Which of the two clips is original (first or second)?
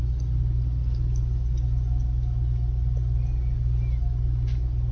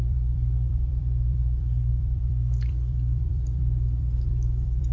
first